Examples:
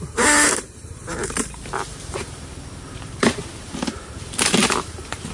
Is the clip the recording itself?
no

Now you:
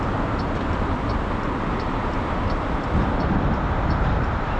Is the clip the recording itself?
no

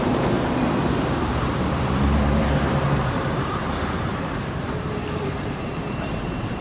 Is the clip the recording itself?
no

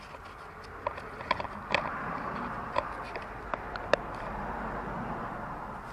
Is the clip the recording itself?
yes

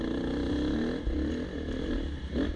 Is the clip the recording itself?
yes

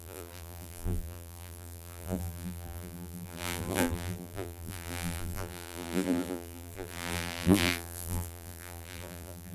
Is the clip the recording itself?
no